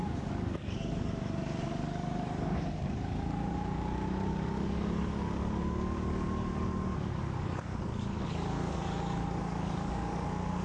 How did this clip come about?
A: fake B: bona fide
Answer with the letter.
A